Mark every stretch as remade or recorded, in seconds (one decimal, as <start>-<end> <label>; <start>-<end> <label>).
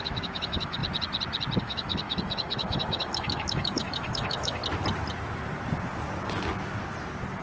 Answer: 0.0-0.8 remade; 0.8-1.6 recorded; 1.6-4.6 remade; 4.6-7.4 recorded